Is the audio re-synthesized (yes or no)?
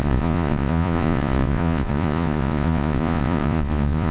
yes